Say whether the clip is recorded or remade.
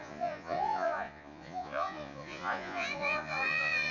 remade